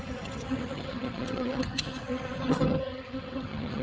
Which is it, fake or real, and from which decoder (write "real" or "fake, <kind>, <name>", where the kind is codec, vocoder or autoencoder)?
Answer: fake, vocoder, HiFi-GAN